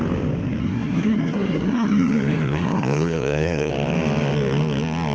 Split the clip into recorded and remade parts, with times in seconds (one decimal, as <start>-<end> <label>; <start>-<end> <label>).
0.0-0.6 recorded; 0.6-3.7 remade; 3.7-5.1 recorded